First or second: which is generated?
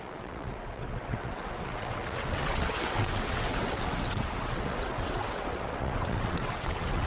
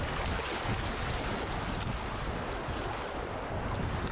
first